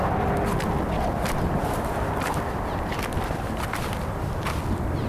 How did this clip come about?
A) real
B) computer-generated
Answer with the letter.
A